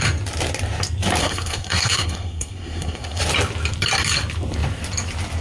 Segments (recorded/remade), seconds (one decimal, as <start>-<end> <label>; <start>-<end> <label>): 0.0-1.2 recorded; 1.2-3.2 remade; 3.2-5.4 recorded